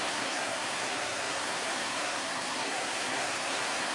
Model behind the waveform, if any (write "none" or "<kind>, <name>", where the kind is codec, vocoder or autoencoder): codec, SNAC